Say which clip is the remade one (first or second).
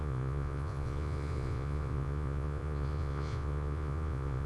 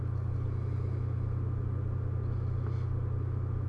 first